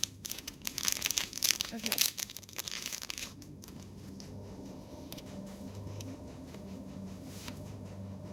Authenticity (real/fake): fake